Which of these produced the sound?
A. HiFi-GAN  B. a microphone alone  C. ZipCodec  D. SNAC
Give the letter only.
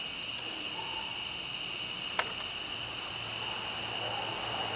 B